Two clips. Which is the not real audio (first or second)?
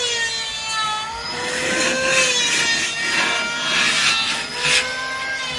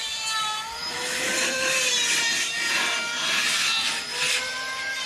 second